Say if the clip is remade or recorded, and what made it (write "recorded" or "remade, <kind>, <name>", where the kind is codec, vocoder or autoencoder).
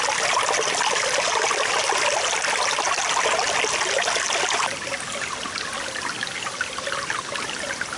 recorded